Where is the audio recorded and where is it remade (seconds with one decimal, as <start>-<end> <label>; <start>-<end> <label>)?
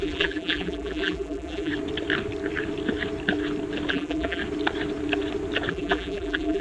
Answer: 0.0-1.7 remade; 1.7-3.9 recorded; 3.9-4.4 remade; 4.4-5.7 recorded; 5.7-6.6 remade